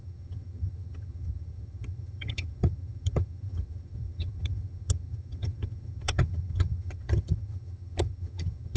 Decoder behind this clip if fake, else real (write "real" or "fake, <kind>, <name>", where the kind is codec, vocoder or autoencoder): fake, vocoder, HiFi-GAN